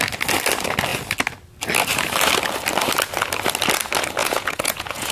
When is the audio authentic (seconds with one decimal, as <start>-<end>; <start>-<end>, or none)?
0.0-4.2